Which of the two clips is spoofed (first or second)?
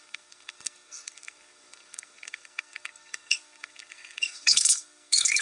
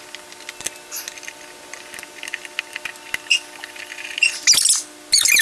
first